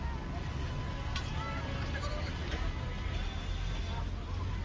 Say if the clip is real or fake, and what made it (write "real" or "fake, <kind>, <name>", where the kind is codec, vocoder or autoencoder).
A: real